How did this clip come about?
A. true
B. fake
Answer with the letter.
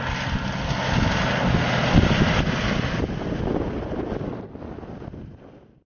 A